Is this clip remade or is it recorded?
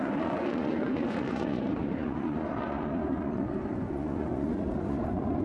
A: remade